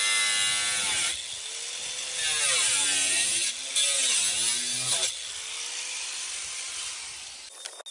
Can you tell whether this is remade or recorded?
recorded